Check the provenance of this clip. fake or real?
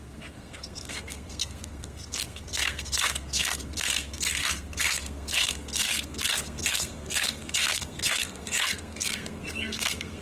fake